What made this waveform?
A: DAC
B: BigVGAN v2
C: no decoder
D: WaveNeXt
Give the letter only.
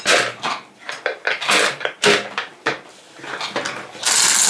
C